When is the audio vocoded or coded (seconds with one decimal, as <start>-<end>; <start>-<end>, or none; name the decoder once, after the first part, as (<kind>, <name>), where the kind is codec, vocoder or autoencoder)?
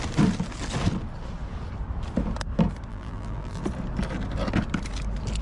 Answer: 2.9-3.6 (vocoder, BigVGAN v2)